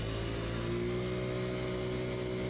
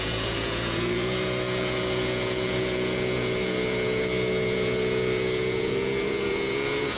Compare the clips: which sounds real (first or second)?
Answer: first